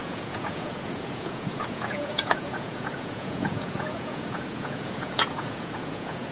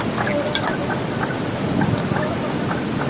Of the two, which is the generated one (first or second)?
first